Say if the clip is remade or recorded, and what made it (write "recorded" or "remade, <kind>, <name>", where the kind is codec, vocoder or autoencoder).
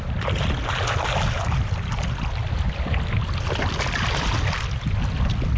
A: recorded